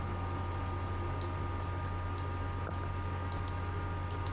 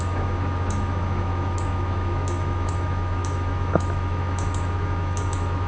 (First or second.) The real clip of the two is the first